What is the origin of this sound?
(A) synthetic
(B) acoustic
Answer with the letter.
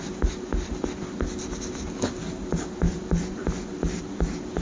B